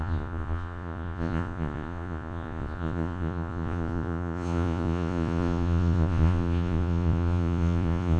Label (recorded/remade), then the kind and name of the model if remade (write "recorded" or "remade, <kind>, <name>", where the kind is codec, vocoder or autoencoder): remade, vocoder, Vocos